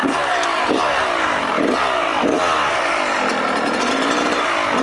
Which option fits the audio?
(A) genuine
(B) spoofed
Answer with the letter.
A